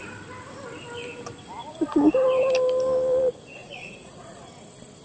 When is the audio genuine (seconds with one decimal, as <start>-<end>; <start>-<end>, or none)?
0.0-3.6; 4.5-5.0